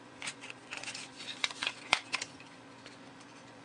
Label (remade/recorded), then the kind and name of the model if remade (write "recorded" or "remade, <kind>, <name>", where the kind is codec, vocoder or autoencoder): remade, vocoder, Vocos